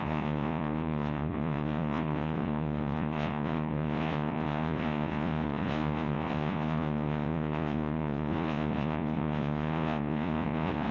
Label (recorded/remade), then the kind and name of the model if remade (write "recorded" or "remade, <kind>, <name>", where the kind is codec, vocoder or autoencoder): remade, vocoder, Vocos